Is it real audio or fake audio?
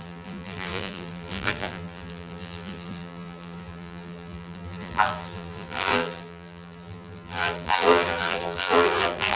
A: fake